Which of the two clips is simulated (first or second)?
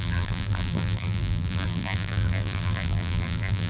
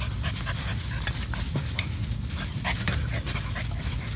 first